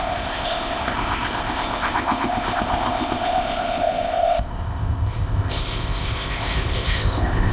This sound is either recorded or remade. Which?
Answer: remade